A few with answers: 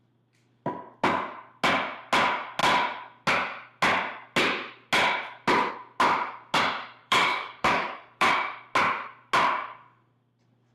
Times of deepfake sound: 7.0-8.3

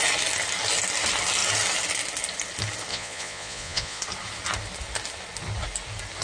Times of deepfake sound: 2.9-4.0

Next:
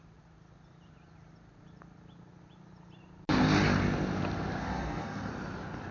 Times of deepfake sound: 4.6-5.3

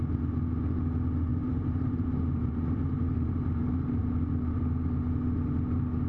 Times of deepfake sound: 1.3-4.1

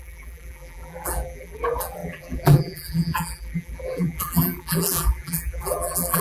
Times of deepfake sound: 0.0-6.2